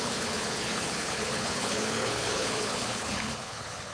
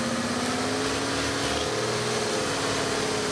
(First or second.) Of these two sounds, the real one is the second